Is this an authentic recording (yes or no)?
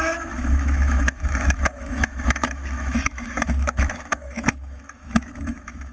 no